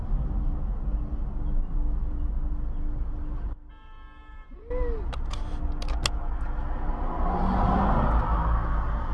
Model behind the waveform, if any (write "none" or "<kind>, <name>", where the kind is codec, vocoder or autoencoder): none